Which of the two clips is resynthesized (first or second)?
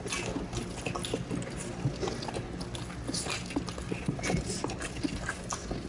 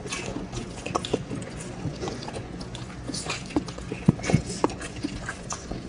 second